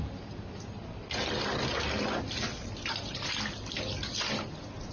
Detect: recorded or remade recorded